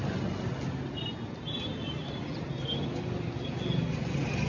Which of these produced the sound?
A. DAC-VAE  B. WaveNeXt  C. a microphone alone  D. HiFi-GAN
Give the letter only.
C